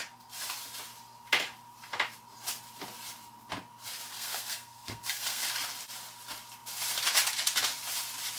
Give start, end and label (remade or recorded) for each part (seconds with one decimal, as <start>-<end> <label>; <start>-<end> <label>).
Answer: 0.0-4.1 recorded; 4.1-5.5 remade; 5.5-8.4 recorded